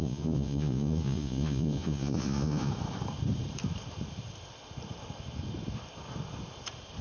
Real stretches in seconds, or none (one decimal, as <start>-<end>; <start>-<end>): 2.7-7.0